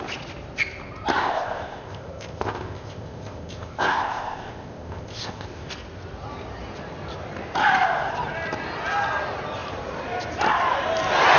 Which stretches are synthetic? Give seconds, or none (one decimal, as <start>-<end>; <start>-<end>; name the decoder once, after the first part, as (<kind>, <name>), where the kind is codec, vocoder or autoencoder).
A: 1.2-5.7 (codec, ZipCodec)